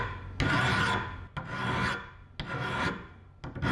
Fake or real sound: real